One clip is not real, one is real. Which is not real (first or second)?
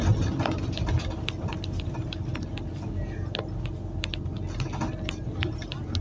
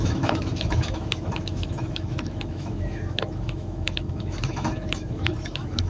second